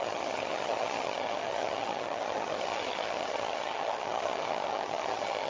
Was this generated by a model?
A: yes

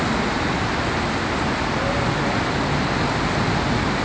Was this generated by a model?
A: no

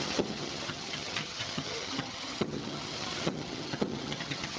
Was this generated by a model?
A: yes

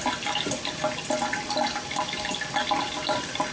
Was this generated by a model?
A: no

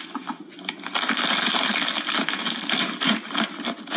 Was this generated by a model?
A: no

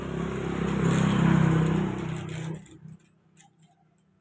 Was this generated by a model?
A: no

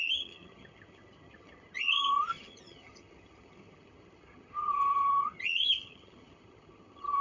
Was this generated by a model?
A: yes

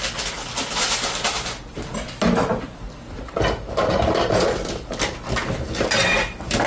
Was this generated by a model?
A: no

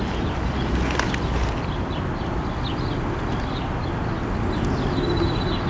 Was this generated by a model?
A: no